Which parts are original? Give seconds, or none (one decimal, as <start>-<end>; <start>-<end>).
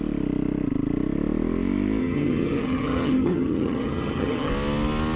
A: 0.0-2.0; 4.5-5.2